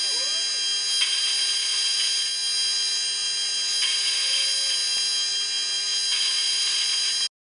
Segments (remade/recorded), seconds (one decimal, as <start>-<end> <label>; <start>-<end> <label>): 0.0-7.5 recorded